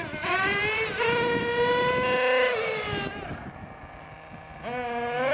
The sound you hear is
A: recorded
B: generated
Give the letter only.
A